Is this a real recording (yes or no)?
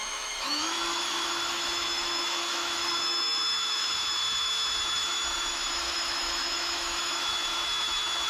no